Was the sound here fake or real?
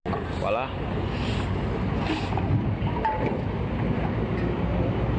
real